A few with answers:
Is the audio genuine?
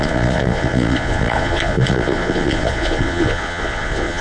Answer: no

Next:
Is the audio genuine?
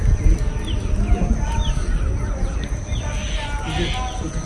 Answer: yes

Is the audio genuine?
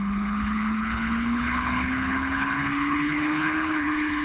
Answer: no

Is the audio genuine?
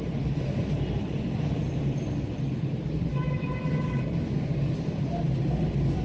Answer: no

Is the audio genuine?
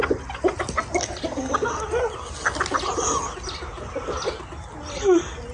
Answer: yes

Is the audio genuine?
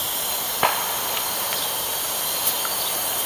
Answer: yes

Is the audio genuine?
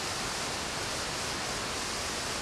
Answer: yes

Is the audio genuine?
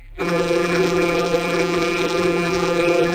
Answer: no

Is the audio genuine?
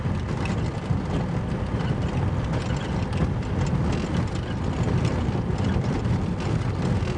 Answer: yes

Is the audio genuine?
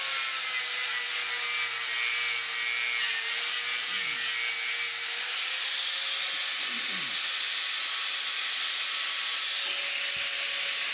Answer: yes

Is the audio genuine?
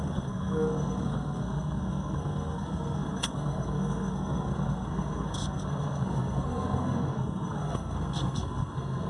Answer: no